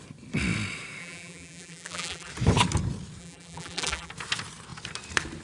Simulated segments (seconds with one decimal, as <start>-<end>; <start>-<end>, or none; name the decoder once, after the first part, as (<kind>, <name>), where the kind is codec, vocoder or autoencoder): 1.0-2.3 (vocoder, BigVGAN v2); 3.2-4.1